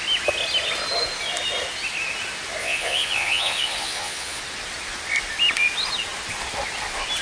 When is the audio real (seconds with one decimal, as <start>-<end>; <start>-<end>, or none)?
0.0-2.6; 4.4-7.2